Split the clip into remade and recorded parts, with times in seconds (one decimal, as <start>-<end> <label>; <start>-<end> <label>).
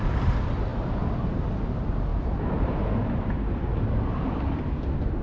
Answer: 0.0-2.1 recorded; 2.1-4.8 remade; 4.8-5.2 recorded